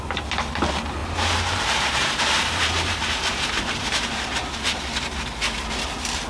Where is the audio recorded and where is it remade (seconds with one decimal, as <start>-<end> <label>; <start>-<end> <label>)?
0.0-1.0 recorded; 1.0-4.8 remade; 4.8-6.3 recorded

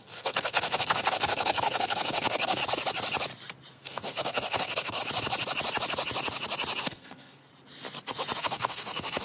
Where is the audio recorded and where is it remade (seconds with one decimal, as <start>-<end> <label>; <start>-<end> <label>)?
0.0-2.6 remade; 2.6-3.7 recorded; 3.7-5.0 remade; 5.0-6.8 recorded; 6.8-7.5 remade; 7.5-8.4 recorded; 8.4-9.2 remade

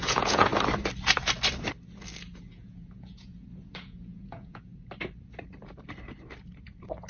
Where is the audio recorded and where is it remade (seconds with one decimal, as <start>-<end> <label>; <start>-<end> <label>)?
0.0-0.5 remade; 0.5-2.5 recorded; 2.5-4.7 remade; 4.7-7.1 recorded

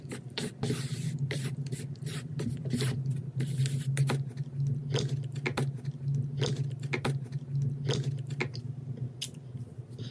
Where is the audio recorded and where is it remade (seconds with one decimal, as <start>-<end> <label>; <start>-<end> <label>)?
0.0-10.1 recorded

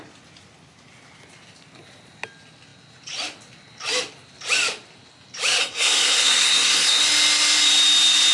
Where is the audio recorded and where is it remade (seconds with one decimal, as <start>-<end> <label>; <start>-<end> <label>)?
0.0-5.6 recorded; 5.6-7.0 remade; 7.0-8.3 recorded

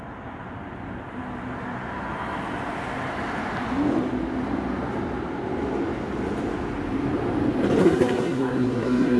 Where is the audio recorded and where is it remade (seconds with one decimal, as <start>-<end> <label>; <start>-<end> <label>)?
0.0-7.8 recorded; 7.8-9.2 remade

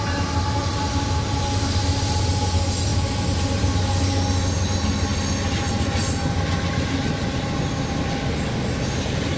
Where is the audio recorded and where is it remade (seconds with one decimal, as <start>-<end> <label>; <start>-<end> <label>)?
0.0-0.6 recorded; 0.6-1.4 remade; 1.4-2.9 recorded; 2.9-3.7 remade; 3.7-9.4 recorded

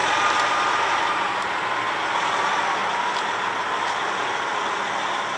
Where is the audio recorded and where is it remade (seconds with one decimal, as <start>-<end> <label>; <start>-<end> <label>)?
0.0-5.4 recorded